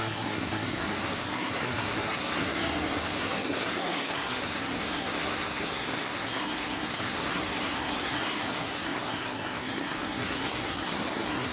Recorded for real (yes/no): no